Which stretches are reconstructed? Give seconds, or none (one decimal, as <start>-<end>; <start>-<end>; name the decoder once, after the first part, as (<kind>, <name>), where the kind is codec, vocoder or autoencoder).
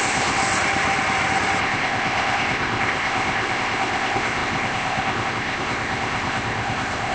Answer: 0.0-0.4 (codec, ZipCodec); 1.6-7.1